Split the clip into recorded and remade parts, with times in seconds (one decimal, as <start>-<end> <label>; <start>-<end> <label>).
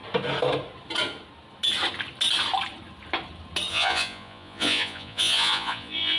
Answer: 0.0-3.7 recorded; 3.7-6.2 remade